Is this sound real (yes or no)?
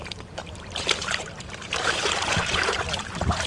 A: no